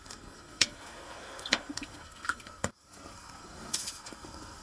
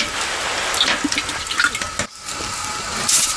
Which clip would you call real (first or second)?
second